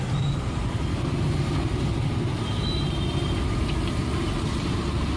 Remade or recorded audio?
recorded